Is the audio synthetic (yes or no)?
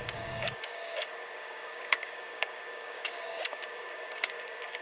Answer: yes